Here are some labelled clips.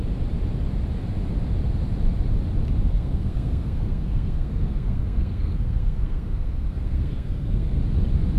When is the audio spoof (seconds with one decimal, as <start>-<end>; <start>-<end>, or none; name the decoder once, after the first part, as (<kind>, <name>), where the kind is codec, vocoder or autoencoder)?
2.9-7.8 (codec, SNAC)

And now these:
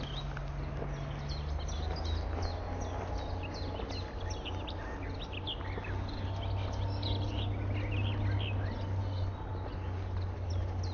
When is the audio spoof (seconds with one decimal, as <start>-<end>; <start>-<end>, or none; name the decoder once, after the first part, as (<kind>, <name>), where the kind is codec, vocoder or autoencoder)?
none

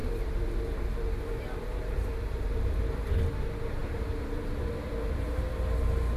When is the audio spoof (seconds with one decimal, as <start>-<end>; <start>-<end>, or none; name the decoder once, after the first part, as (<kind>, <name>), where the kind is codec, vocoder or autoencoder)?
0.0-3.0 (vocoder, BigVGAN v2); 3.8-5.5

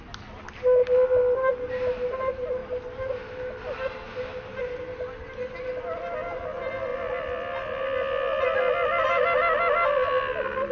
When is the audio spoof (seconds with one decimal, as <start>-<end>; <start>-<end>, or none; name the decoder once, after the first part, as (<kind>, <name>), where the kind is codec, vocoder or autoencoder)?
none